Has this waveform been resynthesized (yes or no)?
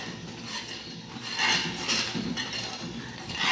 no